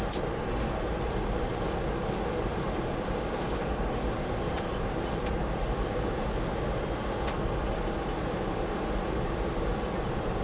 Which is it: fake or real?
real